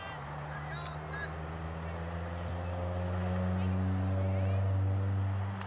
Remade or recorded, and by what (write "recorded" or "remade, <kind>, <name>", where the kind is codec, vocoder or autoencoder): recorded